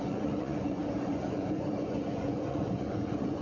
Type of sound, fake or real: fake